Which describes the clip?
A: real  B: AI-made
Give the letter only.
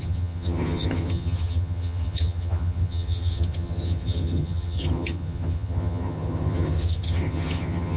B